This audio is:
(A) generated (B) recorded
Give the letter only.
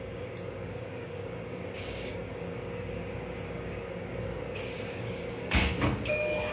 A